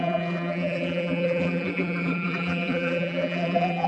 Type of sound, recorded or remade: remade